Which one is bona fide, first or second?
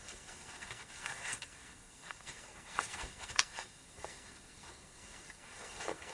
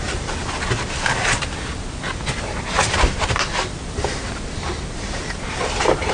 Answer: second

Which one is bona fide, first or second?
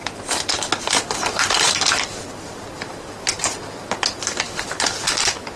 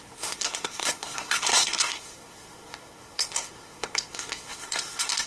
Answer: first